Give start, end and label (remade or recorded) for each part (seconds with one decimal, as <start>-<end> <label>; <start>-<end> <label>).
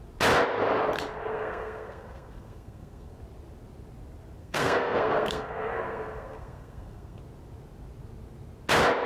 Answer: 0.0-1.3 recorded; 1.3-3.2 remade; 3.2-4.4 recorded; 4.4-7.2 remade; 7.2-9.1 recorded